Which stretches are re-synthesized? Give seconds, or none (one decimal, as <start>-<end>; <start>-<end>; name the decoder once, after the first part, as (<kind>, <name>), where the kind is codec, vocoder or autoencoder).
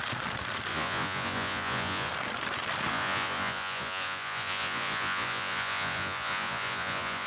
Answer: 0.7-2.1 (vocoder, Vocos); 2.9-7.3